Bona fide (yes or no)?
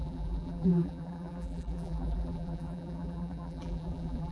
no